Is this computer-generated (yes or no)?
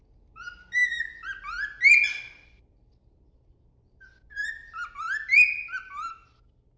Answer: no